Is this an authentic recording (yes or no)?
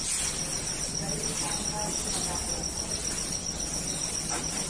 yes